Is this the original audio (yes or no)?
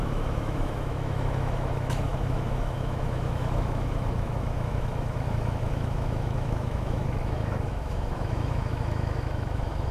no